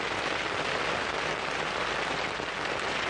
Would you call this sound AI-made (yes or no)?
no